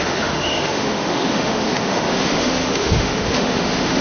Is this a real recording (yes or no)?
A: no